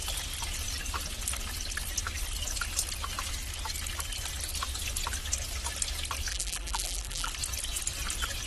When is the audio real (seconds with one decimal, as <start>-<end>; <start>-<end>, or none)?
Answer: 0.0-6.3; 7.3-8.5